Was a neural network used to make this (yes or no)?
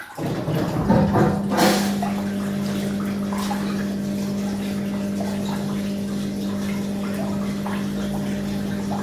no